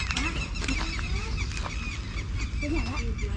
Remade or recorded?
recorded